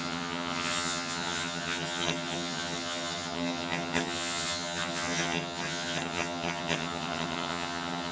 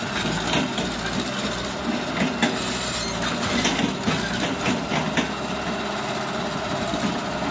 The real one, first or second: second